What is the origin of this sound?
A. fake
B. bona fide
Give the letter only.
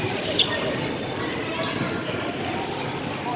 B